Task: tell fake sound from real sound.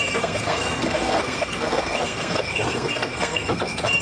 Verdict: fake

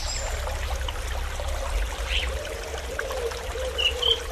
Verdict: real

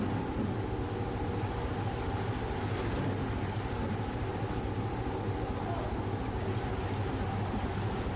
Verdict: real